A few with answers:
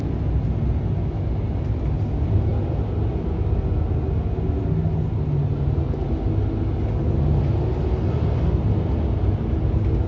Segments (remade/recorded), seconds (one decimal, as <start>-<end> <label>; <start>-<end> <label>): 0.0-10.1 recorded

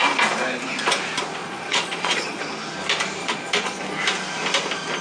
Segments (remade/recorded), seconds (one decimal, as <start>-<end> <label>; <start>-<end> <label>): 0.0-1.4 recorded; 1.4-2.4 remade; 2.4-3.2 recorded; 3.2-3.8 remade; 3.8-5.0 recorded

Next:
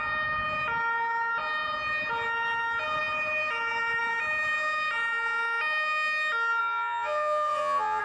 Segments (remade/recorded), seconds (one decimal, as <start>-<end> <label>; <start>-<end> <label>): 0.0-6.6 recorded; 6.6-8.0 remade

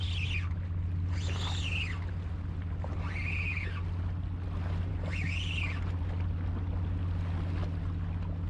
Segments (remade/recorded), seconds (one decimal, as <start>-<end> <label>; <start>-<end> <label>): 0.0-8.5 recorded

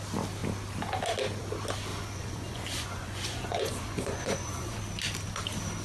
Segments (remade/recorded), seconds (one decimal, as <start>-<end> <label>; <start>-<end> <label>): 0.0-1.9 recorded; 1.9-4.8 remade; 4.8-5.8 recorded

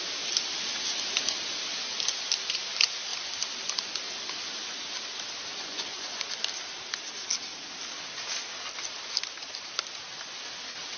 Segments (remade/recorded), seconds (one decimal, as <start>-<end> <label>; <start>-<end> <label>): 0.0-5.5 recorded; 5.5-6.3 remade; 6.3-11.0 recorded

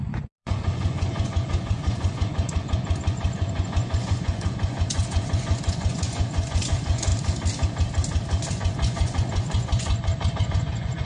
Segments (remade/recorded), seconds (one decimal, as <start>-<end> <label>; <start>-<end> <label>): 0.0-7.1 remade; 7.1-8.5 recorded; 8.5-11.1 remade